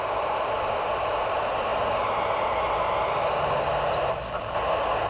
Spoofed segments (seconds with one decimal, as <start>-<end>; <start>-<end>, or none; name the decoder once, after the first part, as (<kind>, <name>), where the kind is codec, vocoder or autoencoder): none